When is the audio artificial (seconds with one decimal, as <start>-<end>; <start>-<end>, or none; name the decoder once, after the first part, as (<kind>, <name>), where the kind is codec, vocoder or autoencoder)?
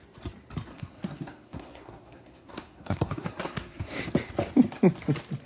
0.7-4.0 (codec, SNAC)